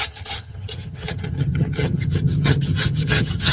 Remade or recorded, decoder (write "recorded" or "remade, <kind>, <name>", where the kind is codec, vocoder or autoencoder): remade, vocoder, HiFi-GAN